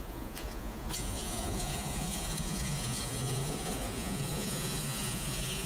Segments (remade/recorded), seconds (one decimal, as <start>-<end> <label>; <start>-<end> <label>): 0.0-5.7 remade